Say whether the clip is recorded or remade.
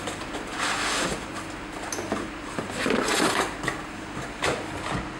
recorded